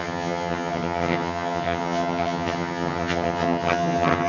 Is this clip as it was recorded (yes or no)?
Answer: no